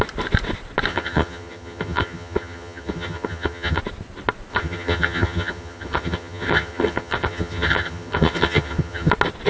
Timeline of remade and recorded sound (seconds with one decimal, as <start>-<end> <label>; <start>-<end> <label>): 0.0-0.9 recorded; 0.9-3.8 remade; 3.8-4.5 recorded; 4.5-9.1 remade; 9.1-9.5 recorded